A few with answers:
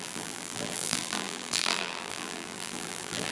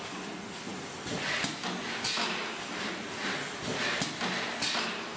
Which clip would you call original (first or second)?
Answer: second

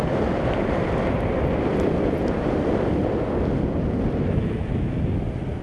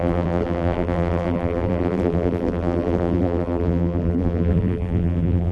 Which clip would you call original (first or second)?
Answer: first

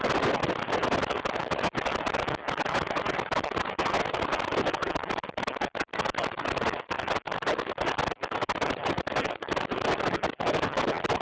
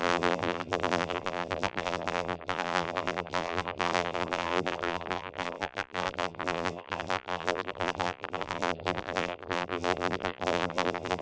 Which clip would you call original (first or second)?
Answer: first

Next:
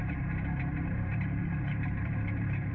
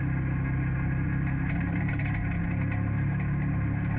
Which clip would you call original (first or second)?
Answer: second